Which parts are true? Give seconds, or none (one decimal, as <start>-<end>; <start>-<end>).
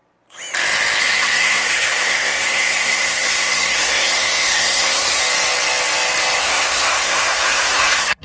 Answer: 0.0-1.0; 5.2-6.4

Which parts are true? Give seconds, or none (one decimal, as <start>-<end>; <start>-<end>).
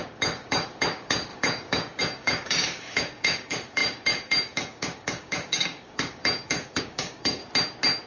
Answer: 7.4-8.1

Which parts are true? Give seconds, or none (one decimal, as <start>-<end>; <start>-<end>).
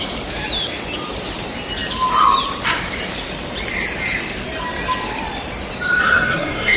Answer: 0.0-6.0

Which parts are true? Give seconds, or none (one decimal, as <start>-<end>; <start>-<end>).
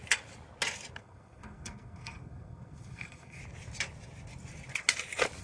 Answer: 0.0-1.0; 3.4-5.4